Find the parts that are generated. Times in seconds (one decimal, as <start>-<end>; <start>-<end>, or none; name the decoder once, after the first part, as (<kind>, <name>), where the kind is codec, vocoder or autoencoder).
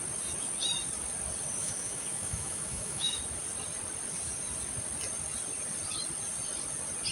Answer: 1.6-3.2 (autoencoder, DAC-VAE)